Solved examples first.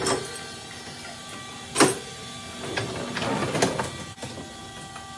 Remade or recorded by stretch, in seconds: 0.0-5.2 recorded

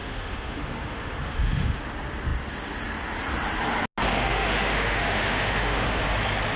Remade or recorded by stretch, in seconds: 0.0-1.8 remade; 1.8-4.1 recorded; 4.1-6.0 remade; 6.0-6.6 recorded

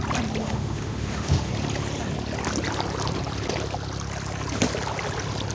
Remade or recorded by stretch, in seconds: 0.0-0.4 recorded; 0.4-1.5 remade; 1.5-5.5 recorded